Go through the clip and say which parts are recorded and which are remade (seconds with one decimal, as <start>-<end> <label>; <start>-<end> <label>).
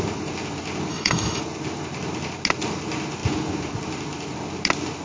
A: 0.0-0.9 recorded; 0.9-1.4 remade; 1.4-5.0 recorded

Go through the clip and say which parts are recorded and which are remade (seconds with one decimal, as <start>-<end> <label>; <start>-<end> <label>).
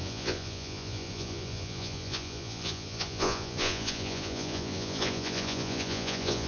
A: 0.0-6.5 remade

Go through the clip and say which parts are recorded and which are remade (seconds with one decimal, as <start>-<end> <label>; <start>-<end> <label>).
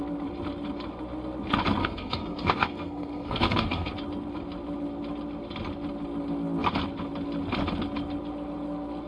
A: 0.0-1.8 recorded; 1.8-3.9 remade; 3.9-9.1 recorded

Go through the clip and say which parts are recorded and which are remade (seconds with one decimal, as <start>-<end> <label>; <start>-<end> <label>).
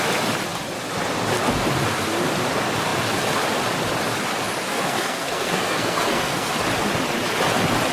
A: 0.0-4.7 recorded; 4.7-6.5 remade; 6.5-7.9 recorded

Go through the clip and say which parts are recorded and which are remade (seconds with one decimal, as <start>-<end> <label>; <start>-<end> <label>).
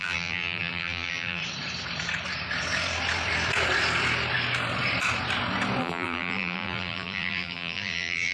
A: 0.0-1.4 remade; 1.4-5.8 recorded; 5.8-8.3 remade